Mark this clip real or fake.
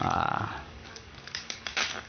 fake